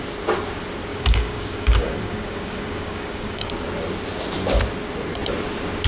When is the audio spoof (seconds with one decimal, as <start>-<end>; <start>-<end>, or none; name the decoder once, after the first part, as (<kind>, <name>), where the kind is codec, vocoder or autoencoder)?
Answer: 0.9-3.5 (codec, DAC)